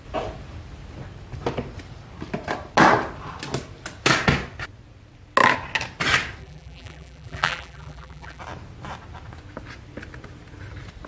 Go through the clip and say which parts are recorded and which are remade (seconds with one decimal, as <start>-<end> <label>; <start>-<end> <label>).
0.0-6.4 recorded; 6.4-8.4 remade; 8.4-11.1 recorded